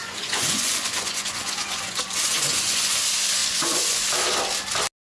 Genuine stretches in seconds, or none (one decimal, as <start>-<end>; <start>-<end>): 3.0-3.4; 4.0-5.0